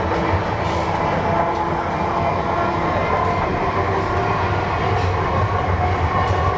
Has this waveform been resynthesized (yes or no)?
no